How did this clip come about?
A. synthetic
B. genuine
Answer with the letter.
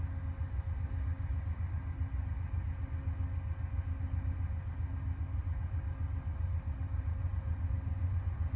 B